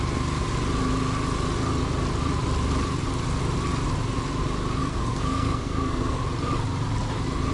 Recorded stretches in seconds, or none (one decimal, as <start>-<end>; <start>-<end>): 0.0-4.8; 6.2-7.5

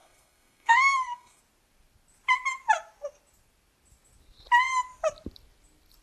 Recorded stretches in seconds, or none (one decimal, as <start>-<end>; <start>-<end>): 1.4-6.0

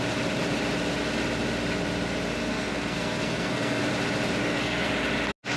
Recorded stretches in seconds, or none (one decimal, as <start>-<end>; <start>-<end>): 0.0-2.4; 3.9-4.4; 4.9-5.6